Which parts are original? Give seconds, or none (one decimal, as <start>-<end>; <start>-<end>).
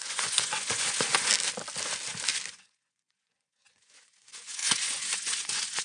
1.3-2.5